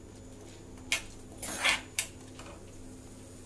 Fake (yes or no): no